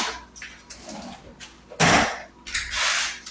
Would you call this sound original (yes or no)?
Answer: yes